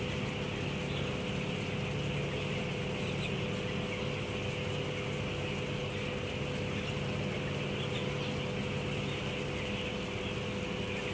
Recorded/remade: recorded